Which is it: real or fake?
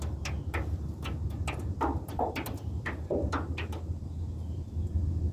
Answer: real